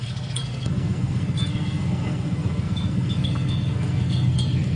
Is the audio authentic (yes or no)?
no